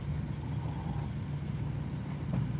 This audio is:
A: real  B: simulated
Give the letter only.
A